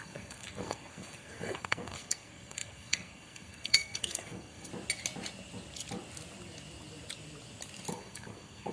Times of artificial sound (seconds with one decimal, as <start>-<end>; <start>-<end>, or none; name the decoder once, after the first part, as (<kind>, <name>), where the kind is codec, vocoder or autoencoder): 0.0-4.7 (codec, SNAC); 7.9-8.7

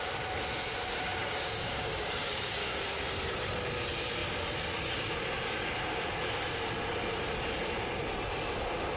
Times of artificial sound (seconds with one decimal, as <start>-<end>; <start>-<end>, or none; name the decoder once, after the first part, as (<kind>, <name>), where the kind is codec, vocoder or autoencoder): 1.2-2.8 (codec, DAC)

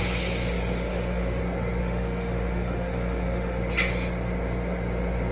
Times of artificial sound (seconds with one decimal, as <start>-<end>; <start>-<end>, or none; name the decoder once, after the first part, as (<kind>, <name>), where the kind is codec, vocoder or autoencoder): 0.9-1.4 (autoencoder, DAC-VAE); 1.8-3.6

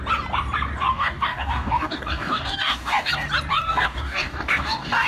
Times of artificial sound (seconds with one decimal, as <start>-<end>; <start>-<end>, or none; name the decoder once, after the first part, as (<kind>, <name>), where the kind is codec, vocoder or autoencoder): 0.9-3.1 (codec, DAC); 3.5-5.1

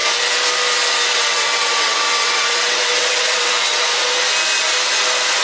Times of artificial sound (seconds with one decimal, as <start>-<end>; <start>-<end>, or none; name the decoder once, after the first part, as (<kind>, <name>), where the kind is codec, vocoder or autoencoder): 1.1-3.9 (vocoder, WaveNeXt)

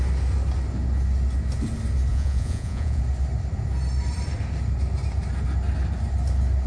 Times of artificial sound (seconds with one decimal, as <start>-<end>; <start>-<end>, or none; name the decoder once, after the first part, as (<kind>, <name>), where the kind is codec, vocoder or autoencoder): 2.1-3.0 (vocoder, Vocos)